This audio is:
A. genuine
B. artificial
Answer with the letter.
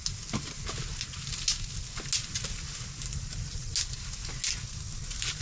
A